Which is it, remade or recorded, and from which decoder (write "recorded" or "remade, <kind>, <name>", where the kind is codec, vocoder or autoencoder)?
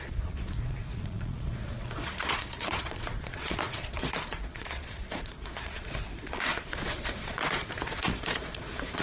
remade, vocoder, Vocos